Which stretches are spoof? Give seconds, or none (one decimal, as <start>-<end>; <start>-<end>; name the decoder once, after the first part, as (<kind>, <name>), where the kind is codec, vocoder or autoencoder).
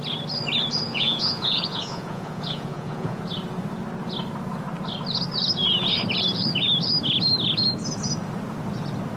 0.9-3.2 (vocoder, Vocos)